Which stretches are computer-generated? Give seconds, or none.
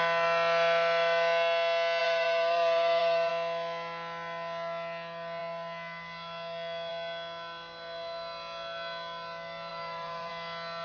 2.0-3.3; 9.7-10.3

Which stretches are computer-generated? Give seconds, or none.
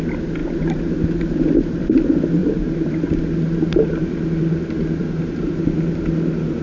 0.4-2.0; 2.4-2.9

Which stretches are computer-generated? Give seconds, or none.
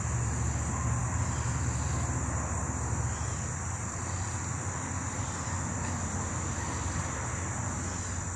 none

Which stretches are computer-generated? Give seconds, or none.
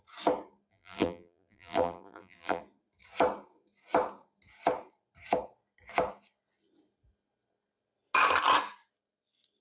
0.7-2.6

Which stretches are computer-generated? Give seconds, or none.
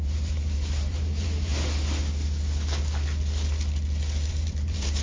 0.0-1.5; 4.3-5.0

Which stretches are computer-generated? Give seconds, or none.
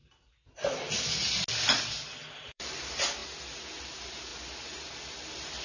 2.3-3.2; 3.8-4.3; 5.0-5.6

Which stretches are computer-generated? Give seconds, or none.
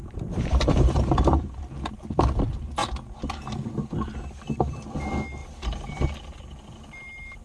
0.0-1.6; 5.4-6.0